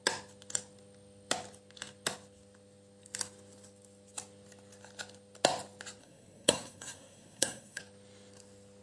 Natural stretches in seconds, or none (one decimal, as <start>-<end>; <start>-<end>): 0.0-6.0; 7.8-8.8